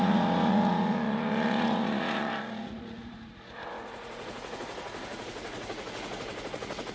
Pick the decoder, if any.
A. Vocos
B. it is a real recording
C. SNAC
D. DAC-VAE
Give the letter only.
A